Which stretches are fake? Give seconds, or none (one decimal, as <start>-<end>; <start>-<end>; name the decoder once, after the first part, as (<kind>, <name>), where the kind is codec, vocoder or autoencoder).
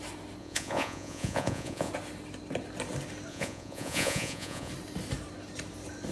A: 0.4-1.9 (vocoder, Vocos); 3.3-4.7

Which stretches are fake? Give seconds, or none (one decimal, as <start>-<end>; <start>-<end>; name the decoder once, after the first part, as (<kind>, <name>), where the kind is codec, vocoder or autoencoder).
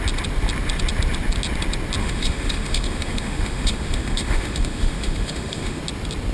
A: 2.0-5.8 (autoencoder, DAC-VAE)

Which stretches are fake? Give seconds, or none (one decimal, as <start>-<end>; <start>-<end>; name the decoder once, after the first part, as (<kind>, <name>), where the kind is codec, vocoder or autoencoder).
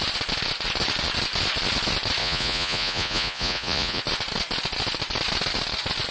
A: 2.2-4.0 (vocoder, Vocos)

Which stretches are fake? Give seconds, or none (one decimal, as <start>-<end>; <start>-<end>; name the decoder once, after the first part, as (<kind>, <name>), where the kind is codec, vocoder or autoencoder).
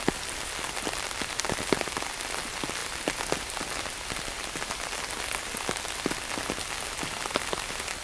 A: none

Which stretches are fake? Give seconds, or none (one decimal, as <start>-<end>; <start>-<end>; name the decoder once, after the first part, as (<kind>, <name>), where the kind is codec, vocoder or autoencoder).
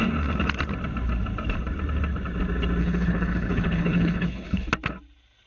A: 2.8-4.7 (codec, HILCodec)